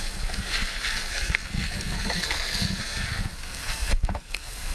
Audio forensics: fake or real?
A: fake